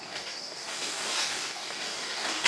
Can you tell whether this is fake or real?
fake